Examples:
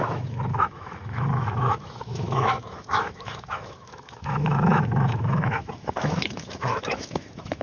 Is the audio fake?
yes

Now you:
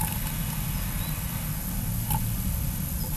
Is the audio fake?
no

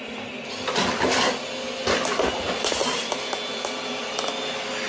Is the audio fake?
no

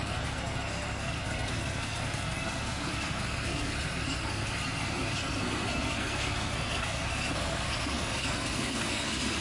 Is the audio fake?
yes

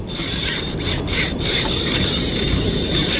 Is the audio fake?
no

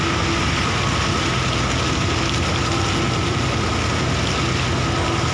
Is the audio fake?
no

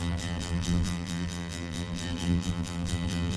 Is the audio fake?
yes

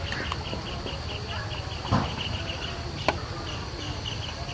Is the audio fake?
no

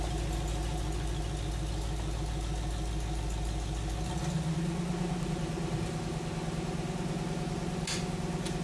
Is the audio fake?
no